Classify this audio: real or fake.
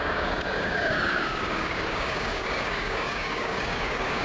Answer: fake